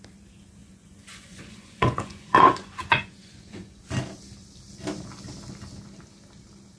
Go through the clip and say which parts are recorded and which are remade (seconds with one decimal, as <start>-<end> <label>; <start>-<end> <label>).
0.0-0.6 recorded; 0.6-3.8 remade; 3.8-6.8 recorded